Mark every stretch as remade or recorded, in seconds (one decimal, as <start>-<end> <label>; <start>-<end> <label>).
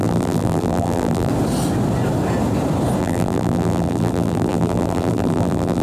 0.0-1.3 remade; 1.3-3.0 recorded; 3.0-5.8 remade